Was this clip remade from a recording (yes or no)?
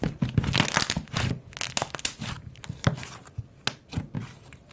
no